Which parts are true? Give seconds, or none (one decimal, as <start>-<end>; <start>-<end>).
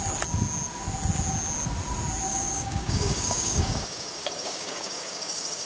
0.0-2.3